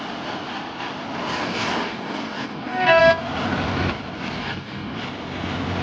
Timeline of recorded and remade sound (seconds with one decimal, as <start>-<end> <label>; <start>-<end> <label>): 0.0-1.4 recorded; 1.4-3.0 remade; 3.0-4.4 recorded; 4.4-5.0 remade; 5.0-5.8 recorded